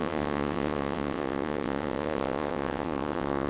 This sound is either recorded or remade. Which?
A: remade